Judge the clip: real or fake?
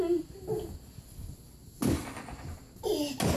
real